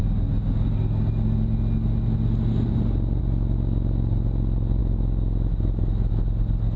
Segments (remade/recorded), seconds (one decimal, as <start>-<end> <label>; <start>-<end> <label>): 0.0-4.8 recorded; 4.8-6.1 remade; 6.1-6.8 recorded